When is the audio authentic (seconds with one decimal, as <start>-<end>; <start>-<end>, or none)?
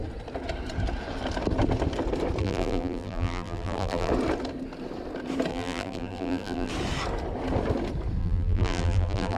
0.0-2.4; 4.1-5.5; 6.7-8.2